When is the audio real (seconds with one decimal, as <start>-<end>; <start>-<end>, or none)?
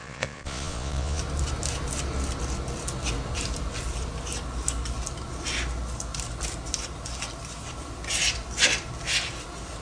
1.2-9.8